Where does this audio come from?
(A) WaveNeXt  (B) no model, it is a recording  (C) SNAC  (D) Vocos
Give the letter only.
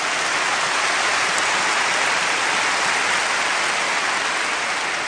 B